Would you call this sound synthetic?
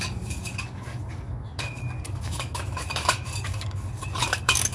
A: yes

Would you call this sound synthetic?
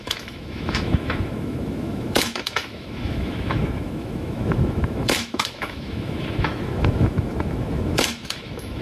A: yes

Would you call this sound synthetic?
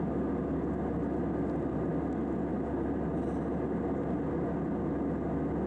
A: no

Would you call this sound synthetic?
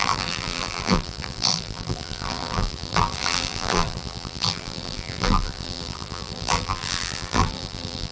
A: yes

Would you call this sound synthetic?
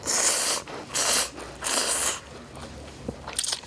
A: no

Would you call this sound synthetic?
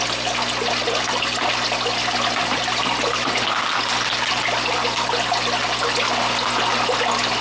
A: no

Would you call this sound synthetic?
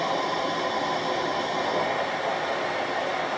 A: no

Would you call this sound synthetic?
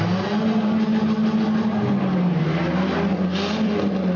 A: no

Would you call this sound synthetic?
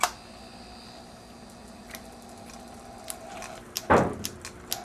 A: no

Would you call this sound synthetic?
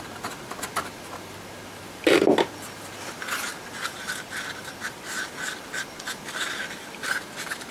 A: no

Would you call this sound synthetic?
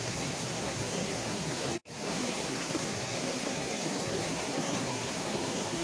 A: yes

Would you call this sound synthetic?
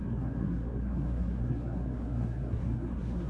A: yes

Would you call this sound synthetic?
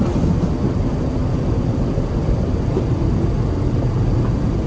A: no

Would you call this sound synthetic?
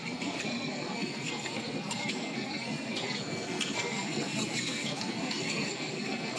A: yes